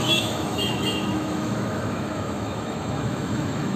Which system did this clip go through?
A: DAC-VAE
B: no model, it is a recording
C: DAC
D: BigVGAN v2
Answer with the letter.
A